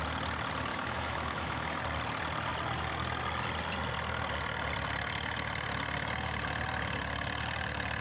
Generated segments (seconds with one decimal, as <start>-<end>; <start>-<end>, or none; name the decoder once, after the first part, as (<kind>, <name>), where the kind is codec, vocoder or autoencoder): 0.7-1.8 (autoencoder, DAC-VAE)